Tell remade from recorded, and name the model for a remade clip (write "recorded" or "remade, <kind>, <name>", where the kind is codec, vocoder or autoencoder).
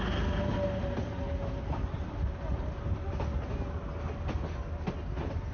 recorded